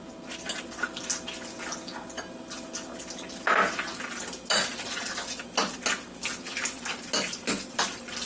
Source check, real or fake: real